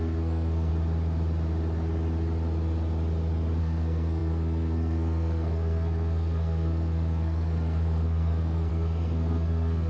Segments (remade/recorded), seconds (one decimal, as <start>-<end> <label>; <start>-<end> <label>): 0.0-0.7 remade; 0.7-3.6 recorded; 3.6-9.9 remade